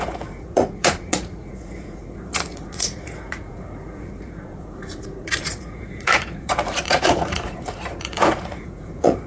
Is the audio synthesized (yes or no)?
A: yes